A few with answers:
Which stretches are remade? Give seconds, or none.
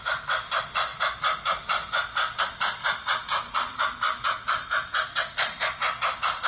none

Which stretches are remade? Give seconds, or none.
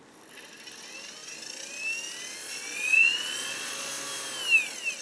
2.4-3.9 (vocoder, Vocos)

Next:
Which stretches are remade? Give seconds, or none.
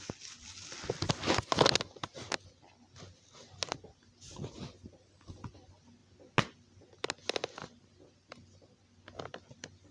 none